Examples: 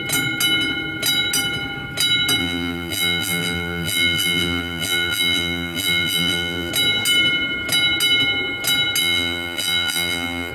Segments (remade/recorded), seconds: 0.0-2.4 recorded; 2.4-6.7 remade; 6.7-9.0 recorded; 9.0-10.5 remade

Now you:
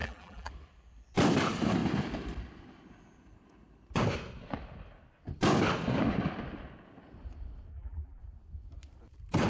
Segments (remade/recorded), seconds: 0.0-0.5 remade; 0.5-7.7 recorded; 7.7-8.2 remade; 8.2-9.5 recorded

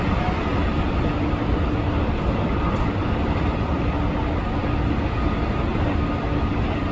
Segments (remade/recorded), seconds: 0.0-0.6 recorded; 0.6-3.9 remade; 3.9-6.9 recorded

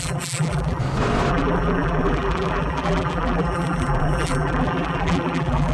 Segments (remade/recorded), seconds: 0.0-0.8 remade; 0.8-1.3 recorded; 1.3-5.7 remade

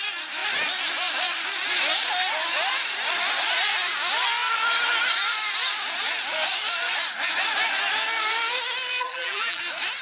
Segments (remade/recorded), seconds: 0.0-9.0 recorded; 9.0-9.6 remade; 9.6-10.0 recorded

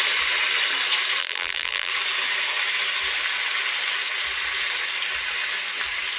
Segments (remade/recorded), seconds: 0.0-1.2 recorded; 1.2-1.9 remade; 1.9-6.2 recorded

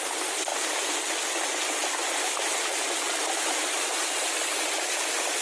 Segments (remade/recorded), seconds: 0.0-2.0 recorded; 2.0-5.0 remade; 5.0-5.4 recorded

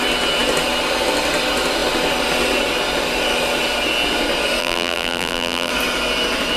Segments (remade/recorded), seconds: 0.0-4.6 recorded; 4.6-5.7 remade; 5.7-6.6 recorded